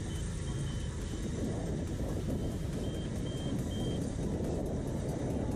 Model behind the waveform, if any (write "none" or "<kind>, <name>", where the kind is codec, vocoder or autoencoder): none